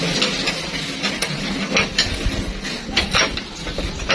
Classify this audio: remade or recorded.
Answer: recorded